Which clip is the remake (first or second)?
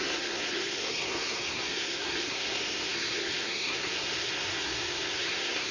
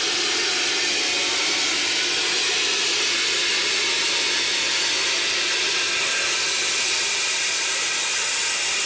first